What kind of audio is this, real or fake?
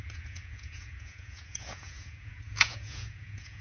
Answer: fake